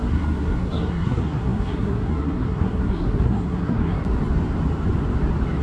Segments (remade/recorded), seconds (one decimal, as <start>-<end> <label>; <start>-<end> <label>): 0.0-4.0 remade; 4.0-5.6 recorded